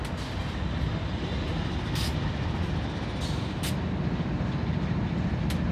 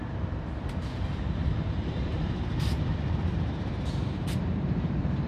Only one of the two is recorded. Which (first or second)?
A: first